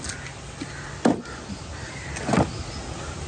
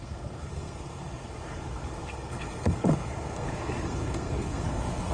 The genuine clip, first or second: first